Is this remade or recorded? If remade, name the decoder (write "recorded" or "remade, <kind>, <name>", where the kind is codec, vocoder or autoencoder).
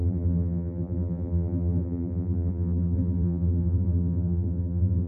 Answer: remade, vocoder, BigVGAN v2